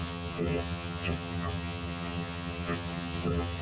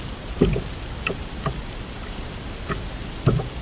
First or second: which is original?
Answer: second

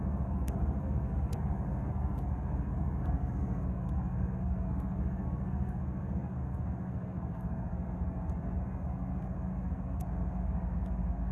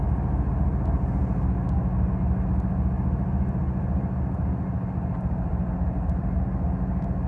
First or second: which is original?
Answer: second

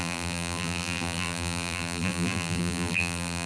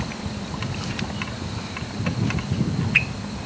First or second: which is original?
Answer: second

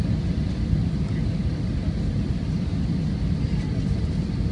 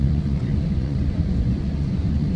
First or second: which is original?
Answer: first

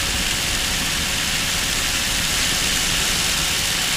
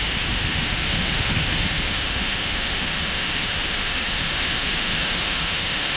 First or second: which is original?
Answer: first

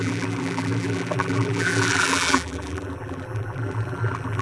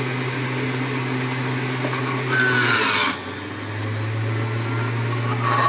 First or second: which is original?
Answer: second